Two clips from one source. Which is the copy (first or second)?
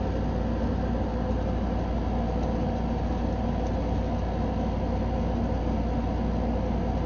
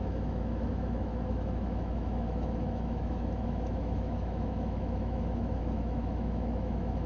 second